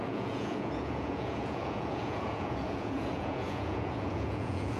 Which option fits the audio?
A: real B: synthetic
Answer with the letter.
B